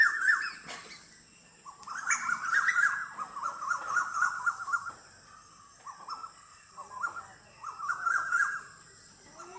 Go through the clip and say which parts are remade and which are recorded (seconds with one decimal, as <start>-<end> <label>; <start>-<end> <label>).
0.0-9.6 recorded